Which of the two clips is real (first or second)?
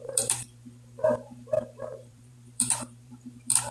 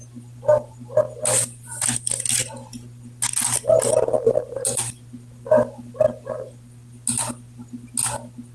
second